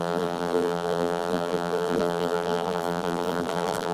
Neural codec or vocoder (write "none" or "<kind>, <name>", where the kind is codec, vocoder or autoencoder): vocoder, BigVGAN v2